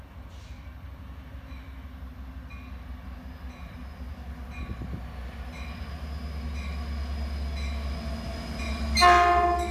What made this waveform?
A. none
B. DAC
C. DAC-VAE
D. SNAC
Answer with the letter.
A